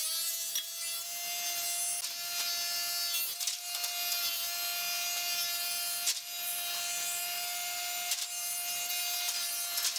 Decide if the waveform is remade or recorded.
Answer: recorded